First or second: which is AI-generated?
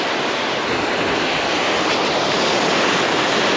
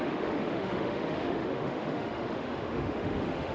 second